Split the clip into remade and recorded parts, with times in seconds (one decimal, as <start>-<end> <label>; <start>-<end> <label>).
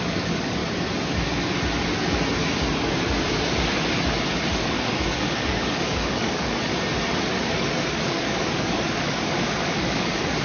0.0-0.6 remade; 0.6-4.5 recorded; 4.5-6.7 remade; 6.7-7.5 recorded; 7.5-10.4 remade